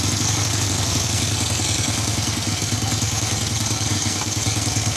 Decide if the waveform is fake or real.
fake